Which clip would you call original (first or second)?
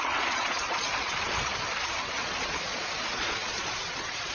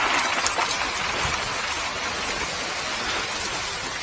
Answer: second